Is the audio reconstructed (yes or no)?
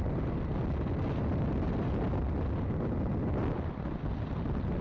no